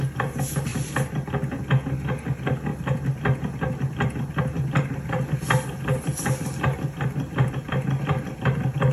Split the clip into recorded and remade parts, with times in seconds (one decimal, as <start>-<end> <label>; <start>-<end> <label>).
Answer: 0.0-8.9 recorded